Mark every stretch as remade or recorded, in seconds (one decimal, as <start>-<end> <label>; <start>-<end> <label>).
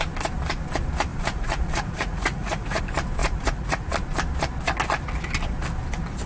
0.0-1.1 recorded; 1.1-2.8 remade; 2.8-3.2 recorded; 3.2-3.9 remade; 3.9-6.3 recorded